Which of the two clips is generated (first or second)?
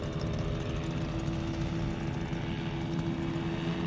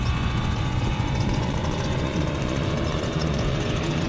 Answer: second